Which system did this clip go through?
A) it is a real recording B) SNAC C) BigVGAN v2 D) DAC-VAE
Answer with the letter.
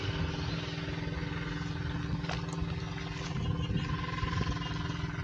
A